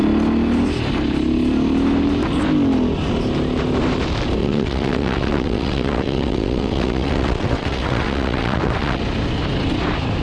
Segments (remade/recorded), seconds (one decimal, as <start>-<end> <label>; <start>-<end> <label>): 0.0-4.4 recorded; 4.4-9.0 remade; 9.0-10.2 recorded